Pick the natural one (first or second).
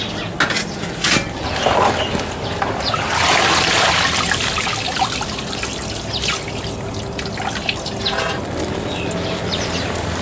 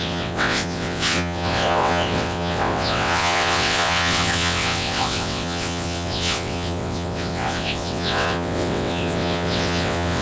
first